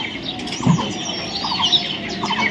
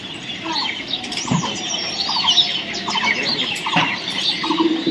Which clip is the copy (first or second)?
second